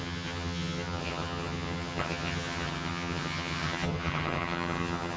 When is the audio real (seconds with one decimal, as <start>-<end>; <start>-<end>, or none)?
none